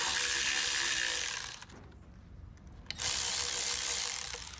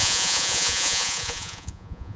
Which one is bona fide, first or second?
first